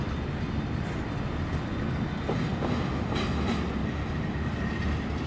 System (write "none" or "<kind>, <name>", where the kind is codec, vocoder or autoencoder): none